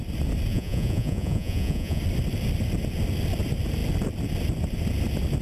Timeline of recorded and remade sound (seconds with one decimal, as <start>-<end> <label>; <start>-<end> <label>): 0.0-0.5 recorded; 0.5-2.0 remade; 2.0-5.4 recorded